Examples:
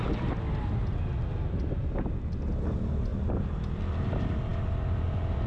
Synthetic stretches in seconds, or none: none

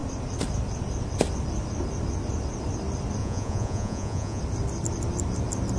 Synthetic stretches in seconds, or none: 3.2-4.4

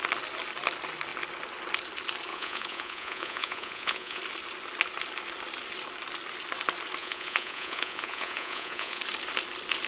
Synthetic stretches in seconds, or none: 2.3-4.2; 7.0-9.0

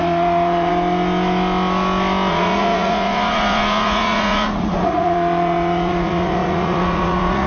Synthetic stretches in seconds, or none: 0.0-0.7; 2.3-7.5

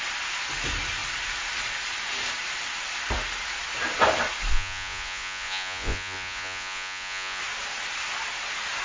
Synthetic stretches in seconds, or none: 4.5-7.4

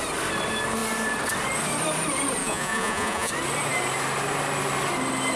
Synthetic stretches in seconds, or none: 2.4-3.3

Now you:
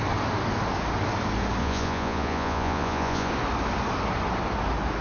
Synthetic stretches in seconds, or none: 1.6-3.3